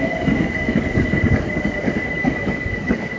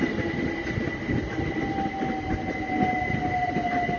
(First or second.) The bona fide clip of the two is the second